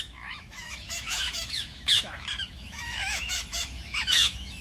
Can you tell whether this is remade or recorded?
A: remade